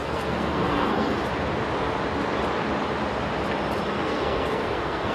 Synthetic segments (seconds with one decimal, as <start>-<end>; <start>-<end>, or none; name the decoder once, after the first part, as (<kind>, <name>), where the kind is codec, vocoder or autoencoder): 0.0-1.3 (codec, SNAC); 3.9-5.1